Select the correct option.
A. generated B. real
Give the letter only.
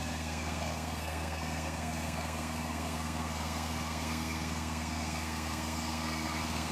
A